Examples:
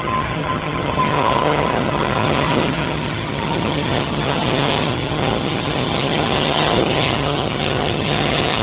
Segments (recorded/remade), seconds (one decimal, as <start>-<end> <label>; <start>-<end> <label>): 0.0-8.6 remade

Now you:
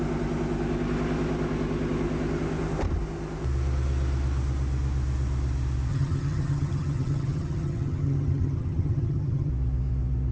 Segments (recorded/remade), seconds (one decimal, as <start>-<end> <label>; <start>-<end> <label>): 0.0-5.9 recorded; 5.9-9.5 remade; 9.5-10.3 recorded

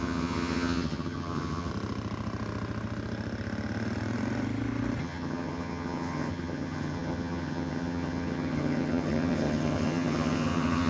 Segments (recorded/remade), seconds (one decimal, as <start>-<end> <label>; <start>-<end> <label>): 0.0-1.7 remade; 1.7-5.0 recorded; 5.0-10.9 remade

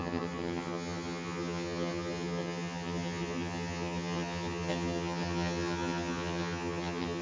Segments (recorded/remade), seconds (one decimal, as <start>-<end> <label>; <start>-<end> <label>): 0.0-7.2 remade

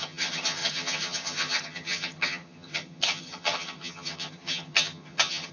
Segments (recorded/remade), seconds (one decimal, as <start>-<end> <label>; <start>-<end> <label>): 0.0-5.5 remade